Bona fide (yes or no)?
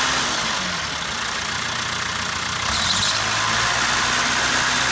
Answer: yes